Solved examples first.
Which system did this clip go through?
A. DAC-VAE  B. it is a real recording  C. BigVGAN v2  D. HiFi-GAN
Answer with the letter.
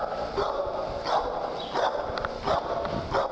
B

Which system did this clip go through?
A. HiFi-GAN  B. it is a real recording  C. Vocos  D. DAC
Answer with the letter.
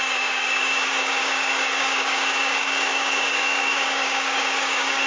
D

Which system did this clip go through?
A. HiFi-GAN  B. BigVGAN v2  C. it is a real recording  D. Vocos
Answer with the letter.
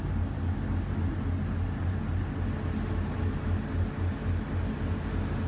C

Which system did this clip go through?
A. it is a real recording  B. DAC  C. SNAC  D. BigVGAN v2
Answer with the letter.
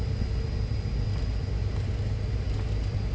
A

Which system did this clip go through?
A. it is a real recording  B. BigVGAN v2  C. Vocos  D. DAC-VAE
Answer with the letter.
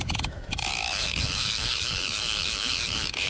D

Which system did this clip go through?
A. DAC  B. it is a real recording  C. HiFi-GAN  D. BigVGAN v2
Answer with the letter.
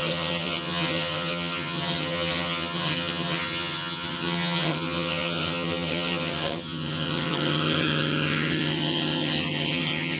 C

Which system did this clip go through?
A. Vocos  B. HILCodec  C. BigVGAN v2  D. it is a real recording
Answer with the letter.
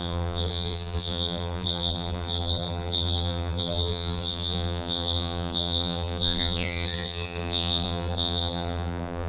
C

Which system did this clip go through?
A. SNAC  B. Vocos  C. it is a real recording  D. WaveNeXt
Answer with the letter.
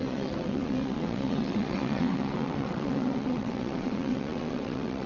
D